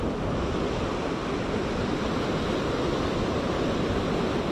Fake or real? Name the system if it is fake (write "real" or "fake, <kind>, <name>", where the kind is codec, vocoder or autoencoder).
real